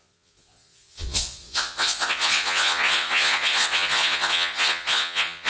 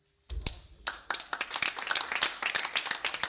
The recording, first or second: second